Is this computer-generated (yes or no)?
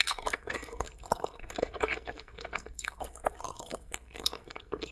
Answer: yes